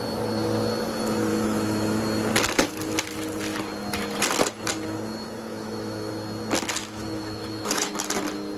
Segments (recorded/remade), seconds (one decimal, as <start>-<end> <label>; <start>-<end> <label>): 0.0-1.3 recorded; 1.3-2.0 remade; 2.0-5.5 recorded; 5.5-6.1 remade; 6.1-6.8 recorded; 6.8-7.9 remade; 7.9-8.6 recorded